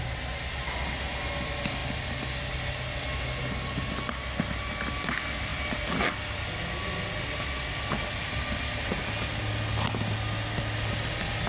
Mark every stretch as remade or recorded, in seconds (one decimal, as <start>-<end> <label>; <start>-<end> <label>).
0.0-11.5 recorded